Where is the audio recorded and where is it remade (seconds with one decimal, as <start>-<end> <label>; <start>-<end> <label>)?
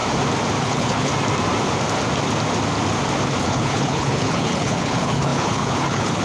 0.0-0.6 recorded; 0.6-1.1 remade; 1.1-3.4 recorded; 3.4-6.2 remade